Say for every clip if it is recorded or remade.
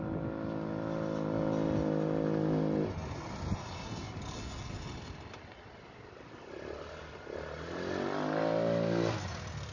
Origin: recorded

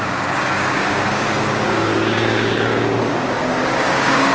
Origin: remade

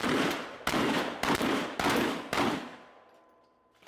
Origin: recorded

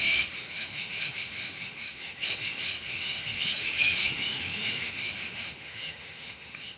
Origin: remade